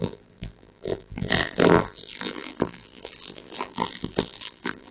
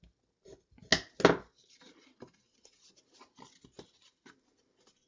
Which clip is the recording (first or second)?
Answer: second